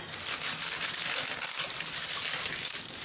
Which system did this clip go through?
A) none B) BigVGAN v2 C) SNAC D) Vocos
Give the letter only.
A